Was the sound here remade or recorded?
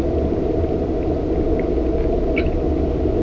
recorded